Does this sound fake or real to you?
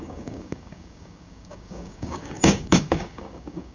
fake